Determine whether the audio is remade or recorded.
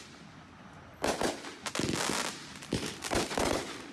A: recorded